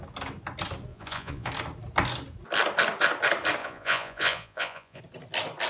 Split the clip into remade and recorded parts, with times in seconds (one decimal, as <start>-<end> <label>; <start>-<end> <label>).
0.0-0.9 recorded; 0.9-1.5 remade; 1.5-3.6 recorded; 3.6-5.0 remade; 5.0-5.7 recorded